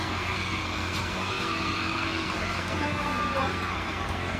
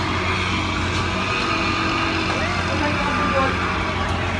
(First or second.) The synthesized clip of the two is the first